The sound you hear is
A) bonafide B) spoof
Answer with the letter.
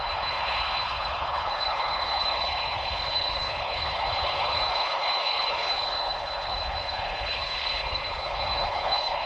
B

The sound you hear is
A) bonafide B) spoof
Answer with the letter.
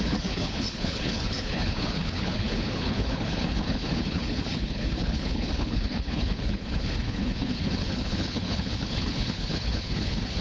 B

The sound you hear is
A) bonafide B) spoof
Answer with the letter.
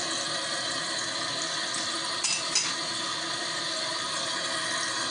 A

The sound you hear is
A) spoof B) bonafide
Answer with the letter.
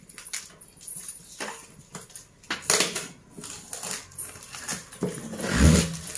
B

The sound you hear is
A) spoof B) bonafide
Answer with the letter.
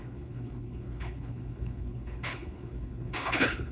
A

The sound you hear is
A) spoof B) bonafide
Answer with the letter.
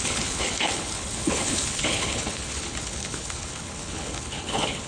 A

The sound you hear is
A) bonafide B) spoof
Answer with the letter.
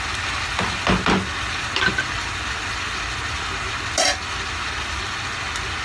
A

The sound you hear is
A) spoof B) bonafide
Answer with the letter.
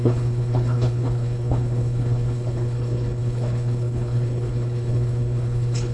A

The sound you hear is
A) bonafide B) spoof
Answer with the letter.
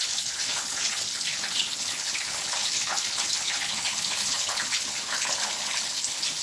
B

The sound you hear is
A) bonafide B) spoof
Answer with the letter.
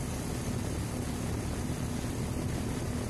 A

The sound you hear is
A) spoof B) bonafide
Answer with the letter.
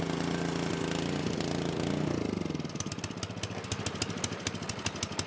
B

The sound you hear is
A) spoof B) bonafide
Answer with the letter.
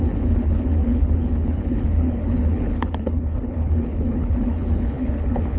A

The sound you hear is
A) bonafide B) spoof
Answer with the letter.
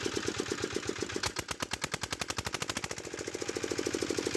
A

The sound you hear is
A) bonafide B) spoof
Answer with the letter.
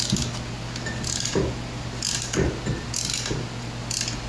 A